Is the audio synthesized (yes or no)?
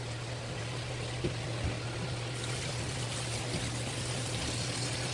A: no